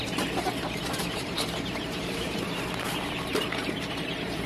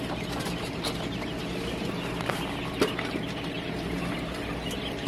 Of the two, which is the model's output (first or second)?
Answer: first